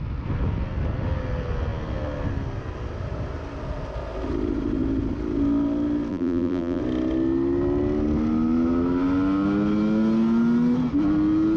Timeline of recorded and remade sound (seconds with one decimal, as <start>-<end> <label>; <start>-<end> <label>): 0.0-6.1 recorded; 6.1-6.8 remade; 6.8-11.6 recorded